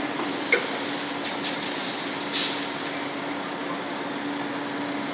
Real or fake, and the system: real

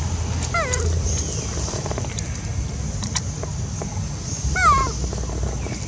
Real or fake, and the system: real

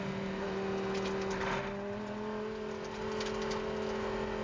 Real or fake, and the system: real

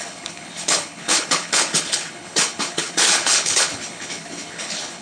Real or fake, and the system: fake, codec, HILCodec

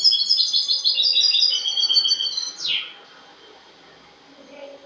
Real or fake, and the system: real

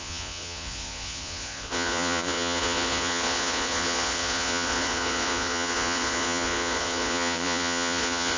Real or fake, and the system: fake, vocoder, Vocos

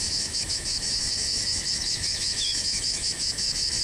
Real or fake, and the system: fake, autoencoder, DAC-VAE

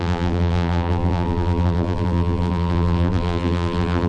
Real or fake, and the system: fake, vocoder, BigVGAN v2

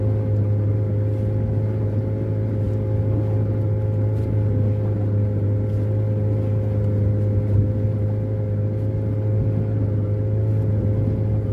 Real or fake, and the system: real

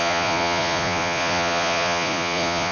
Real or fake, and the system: fake, vocoder, Vocos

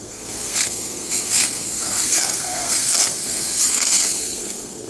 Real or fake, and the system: fake, codec, SNAC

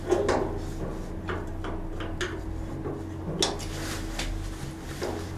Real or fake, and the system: real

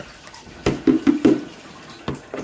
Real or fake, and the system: real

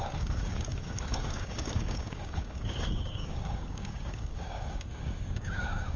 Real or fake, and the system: fake, codec, DAC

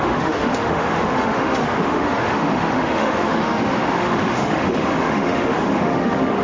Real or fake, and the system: fake, autoencoder, DAC-VAE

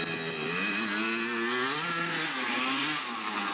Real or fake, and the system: real